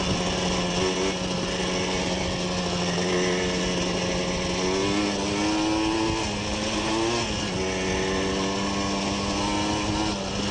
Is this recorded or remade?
recorded